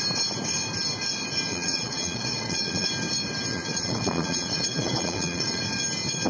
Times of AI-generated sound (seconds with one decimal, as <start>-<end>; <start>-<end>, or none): 1.5-2.9; 3.5-5.6